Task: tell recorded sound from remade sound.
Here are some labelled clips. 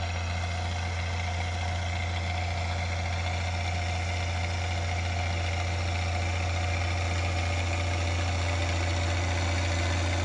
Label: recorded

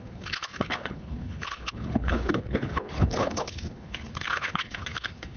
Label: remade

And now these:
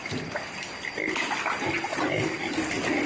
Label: recorded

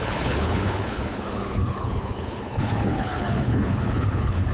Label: remade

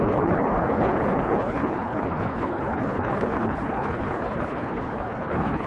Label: remade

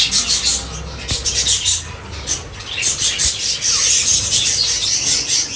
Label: recorded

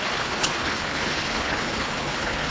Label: remade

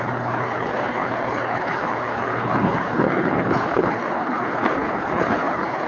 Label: remade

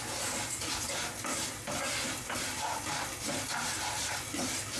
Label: recorded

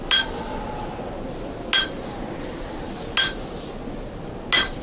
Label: recorded